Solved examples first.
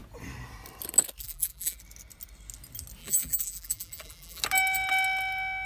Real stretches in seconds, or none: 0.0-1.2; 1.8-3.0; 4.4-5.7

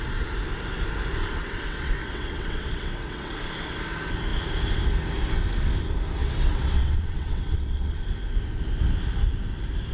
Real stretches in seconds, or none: 0.0-1.4; 3.3-6.2; 8.0-9.9

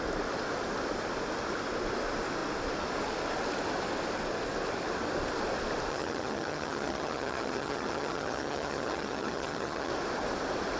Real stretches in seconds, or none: 0.0-5.9; 9.9-10.8

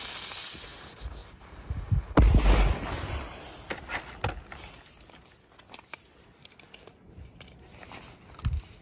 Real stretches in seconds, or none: 0.0-8.8

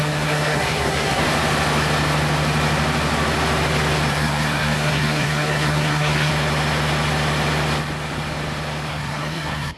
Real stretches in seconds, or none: 1.2-4.1; 6.3-8.9

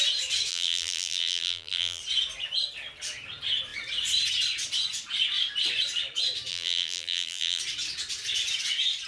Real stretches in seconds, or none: 0.0-0.5; 2.0-6.5; 7.6-9.1

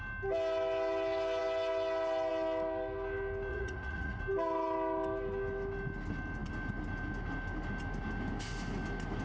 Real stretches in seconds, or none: 0.0-3.5; 4.2-9.2

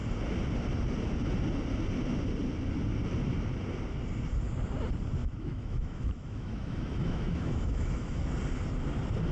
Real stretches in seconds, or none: 0.0-5.2; 8.3-9.3